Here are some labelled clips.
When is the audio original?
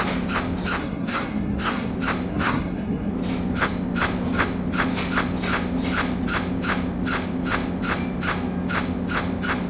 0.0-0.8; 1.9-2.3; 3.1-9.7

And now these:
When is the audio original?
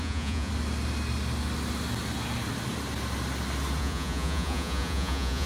0.5-3.8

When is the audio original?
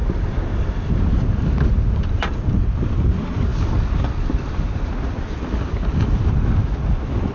0.0-7.3